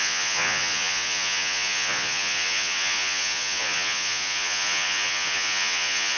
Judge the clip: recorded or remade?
remade